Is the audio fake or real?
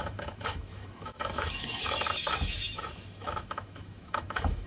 fake